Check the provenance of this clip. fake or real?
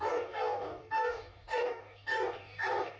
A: fake